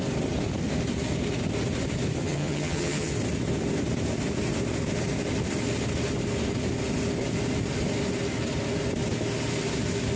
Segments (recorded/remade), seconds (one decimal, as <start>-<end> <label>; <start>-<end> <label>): 0.0-2.2 recorded; 2.2-3.1 remade; 3.1-10.2 recorded